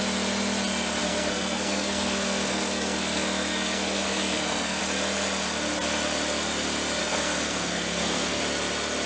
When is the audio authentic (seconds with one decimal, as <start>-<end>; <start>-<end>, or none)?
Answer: 0.0-1.0; 4.8-7.0; 8.4-9.1